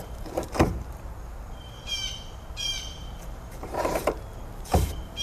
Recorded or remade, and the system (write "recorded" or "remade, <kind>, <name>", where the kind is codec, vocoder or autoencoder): remade, vocoder, BigVGAN v2